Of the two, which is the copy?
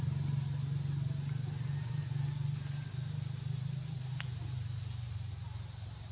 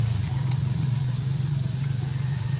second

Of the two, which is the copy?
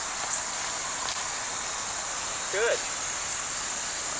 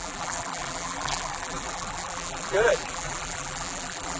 second